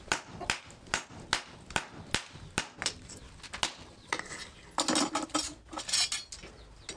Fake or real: real